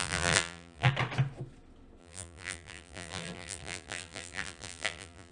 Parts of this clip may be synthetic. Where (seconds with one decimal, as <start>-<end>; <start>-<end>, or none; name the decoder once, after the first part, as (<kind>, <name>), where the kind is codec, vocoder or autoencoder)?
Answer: 0.0-0.9 (vocoder, BigVGAN v2); 2.0-5.3